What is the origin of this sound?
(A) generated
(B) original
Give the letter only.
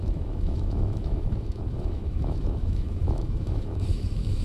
A